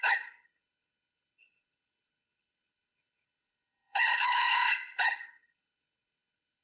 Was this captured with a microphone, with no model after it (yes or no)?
no